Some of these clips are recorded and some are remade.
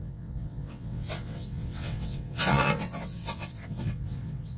remade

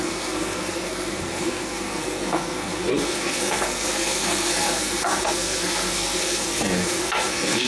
remade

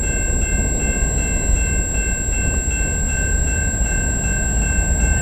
recorded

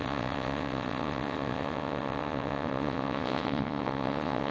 remade